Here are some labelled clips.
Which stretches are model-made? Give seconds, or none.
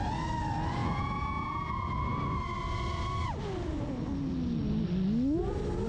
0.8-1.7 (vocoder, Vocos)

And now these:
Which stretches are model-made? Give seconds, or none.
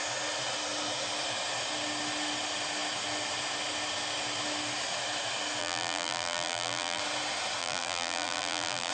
5.6-7.0 (vocoder, BigVGAN v2); 7.6-8.9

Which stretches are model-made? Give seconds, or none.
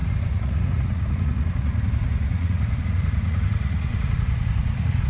0.0-5.1 (vocoder, Vocos)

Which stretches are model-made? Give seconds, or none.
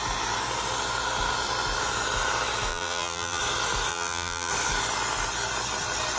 2.7-3.4 (vocoder, BigVGAN v2); 3.9-4.5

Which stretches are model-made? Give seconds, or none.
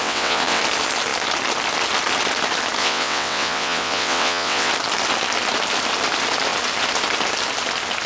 0.0-0.6 (vocoder, WaveNeXt); 2.8-4.7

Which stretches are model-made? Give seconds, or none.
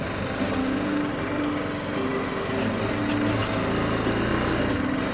0.6-1.1 (codec, DAC)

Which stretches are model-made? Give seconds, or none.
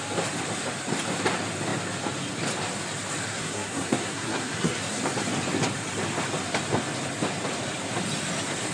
3.3-5.0 (codec, SNAC)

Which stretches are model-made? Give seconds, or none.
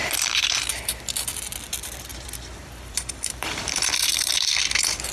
0.0-5.1 (vocoder, BigVGAN v2)